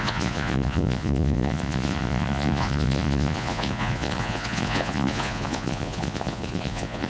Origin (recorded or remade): remade